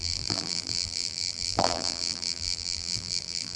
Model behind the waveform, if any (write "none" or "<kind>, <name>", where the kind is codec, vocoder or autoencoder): vocoder, BigVGAN v2